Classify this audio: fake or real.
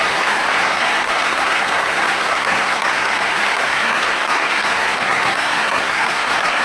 fake